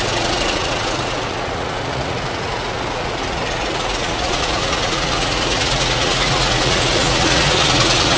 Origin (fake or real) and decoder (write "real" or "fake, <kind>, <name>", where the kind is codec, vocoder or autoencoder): fake, vocoder, Vocos